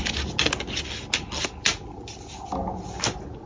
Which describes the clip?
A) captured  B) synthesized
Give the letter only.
A